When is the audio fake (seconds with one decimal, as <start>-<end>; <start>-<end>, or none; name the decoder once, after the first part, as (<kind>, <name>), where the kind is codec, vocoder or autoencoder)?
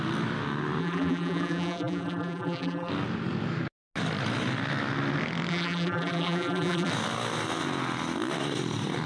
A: 0.8-2.9 (vocoder, BigVGAN v2); 5.5-6.9